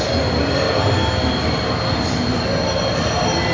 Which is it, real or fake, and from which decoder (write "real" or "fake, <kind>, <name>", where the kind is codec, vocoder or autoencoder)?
real